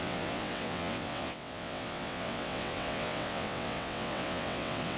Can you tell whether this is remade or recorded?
remade